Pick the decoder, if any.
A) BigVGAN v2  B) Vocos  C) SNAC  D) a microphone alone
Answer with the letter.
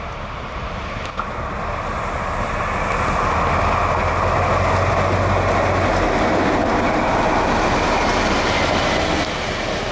D